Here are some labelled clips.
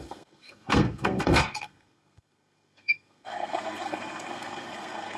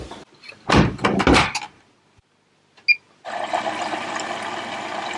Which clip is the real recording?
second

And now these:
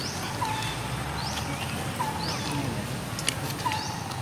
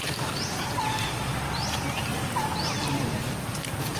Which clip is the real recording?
first